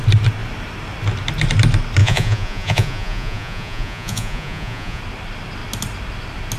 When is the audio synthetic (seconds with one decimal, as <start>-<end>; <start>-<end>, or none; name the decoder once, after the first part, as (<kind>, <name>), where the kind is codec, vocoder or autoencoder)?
2.0-5.0 (vocoder, Vocos)